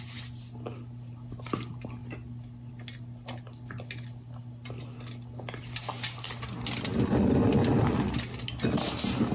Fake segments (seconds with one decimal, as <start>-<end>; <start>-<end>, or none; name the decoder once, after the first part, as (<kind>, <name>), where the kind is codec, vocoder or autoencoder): none